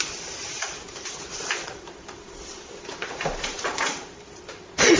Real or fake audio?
fake